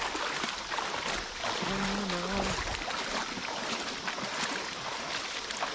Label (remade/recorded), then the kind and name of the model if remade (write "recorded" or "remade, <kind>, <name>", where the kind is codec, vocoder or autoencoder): recorded